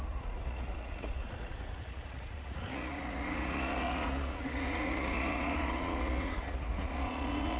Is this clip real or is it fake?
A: fake